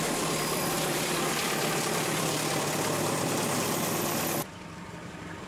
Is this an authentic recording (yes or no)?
no